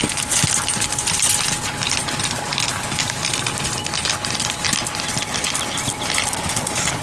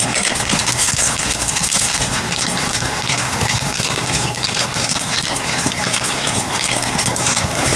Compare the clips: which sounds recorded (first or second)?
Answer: first